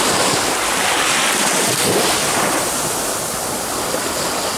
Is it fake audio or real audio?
real